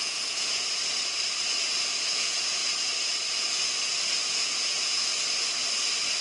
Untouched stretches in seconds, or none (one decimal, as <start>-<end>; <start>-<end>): 0.8-2.1; 2.6-4.4; 5.1-6.2